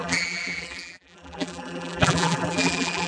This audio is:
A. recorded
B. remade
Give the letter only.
B